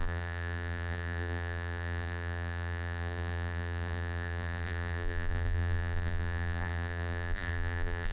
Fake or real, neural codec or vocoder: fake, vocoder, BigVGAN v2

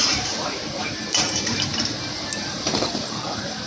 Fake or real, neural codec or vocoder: fake, vocoder, BigVGAN v2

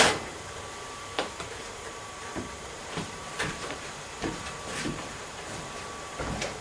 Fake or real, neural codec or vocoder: fake, vocoder, BigVGAN v2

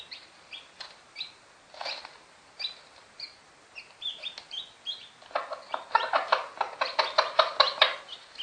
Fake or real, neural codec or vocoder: real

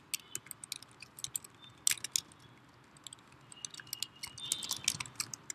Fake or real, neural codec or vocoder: real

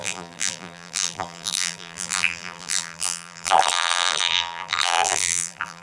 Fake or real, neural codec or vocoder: fake, vocoder, BigVGAN v2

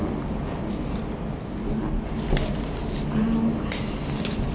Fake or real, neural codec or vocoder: real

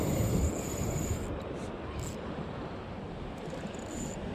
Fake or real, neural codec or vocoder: real